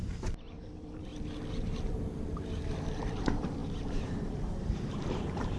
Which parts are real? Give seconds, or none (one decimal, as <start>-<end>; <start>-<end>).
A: 1.1-3.0